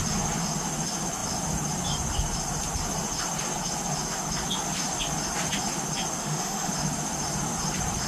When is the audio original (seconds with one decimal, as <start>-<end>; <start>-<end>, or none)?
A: 0.0-6.2; 6.7-8.1